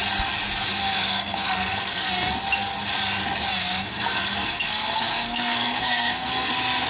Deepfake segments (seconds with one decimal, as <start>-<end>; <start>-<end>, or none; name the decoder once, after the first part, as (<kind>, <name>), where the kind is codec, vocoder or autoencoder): 0.8-2.1 (codec, SNAC); 3.6-6.5